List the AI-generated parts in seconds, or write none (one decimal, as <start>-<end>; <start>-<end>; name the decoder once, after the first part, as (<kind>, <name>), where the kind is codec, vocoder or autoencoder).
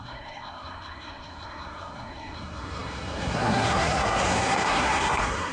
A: 0.0-5.5 (codec, SNAC)